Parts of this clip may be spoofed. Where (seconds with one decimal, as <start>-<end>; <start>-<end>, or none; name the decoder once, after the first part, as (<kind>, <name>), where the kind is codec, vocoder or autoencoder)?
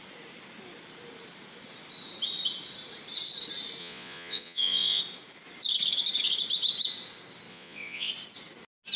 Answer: 3.8-5.0 (vocoder, Vocos); 7.5-8.1